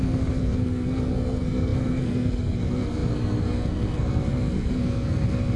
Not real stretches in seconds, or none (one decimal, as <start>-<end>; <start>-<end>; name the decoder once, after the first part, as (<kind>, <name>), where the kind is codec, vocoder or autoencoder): 0.0-5.6 (codec, SNAC)